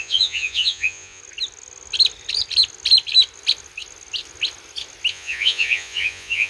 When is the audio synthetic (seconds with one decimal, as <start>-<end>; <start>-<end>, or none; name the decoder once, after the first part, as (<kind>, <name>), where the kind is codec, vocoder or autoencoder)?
0.0-1.2 (vocoder, Vocos); 5.1-6.5